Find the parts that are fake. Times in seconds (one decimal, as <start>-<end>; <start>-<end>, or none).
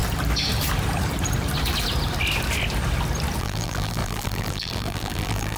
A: 3.4-5.6